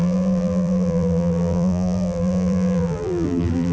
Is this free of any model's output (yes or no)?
no